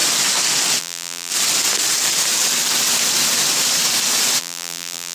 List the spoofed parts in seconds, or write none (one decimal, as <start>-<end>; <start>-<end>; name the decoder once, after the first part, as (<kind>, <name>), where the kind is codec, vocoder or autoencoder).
0.8-1.3 (vocoder, BigVGAN v2); 4.4-5.1